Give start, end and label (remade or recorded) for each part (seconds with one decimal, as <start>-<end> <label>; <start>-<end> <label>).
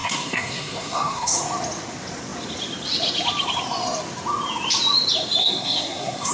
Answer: 0.0-1.4 remade; 1.4-5.4 recorded; 5.4-6.3 remade